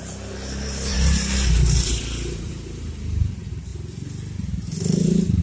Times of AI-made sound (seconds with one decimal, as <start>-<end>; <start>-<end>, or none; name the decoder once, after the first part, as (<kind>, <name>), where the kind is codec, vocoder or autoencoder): 0.9-2.5 (vocoder, BigVGAN v2)